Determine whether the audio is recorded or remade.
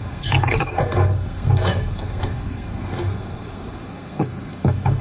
remade